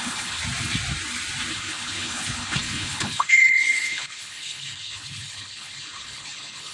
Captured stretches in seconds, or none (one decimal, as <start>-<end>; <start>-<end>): 0.4-1.5